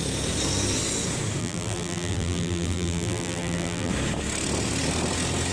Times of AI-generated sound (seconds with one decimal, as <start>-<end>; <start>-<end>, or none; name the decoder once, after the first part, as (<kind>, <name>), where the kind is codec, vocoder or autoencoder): 1.4-3.9 (vocoder, BigVGAN v2)

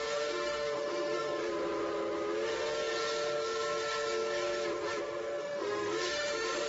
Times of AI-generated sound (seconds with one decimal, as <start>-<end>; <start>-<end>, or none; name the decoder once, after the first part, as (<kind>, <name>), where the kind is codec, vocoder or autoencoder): 0.0-1.4 (autoencoder, DAC-VAE); 5.4-6.7

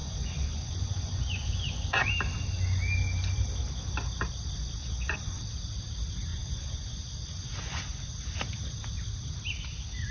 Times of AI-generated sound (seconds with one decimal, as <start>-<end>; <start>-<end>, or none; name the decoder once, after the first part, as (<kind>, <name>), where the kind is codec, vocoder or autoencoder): 0.0-2.1 (vocoder, Vocos); 4.8-5.4; 6.3-8.1

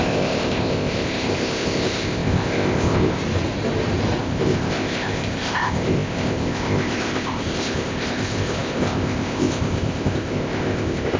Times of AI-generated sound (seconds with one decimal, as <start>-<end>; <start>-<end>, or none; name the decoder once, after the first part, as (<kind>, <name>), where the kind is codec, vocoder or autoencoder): 0.0-3.2 (codec, ZipCodec); 4.2-11.2

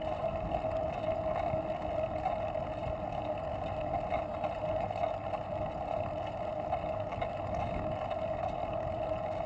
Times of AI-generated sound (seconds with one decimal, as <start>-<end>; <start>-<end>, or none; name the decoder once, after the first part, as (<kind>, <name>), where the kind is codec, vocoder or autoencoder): none